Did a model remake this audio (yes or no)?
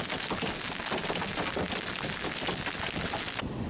no